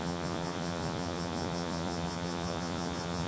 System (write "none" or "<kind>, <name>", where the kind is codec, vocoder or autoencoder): vocoder, Vocos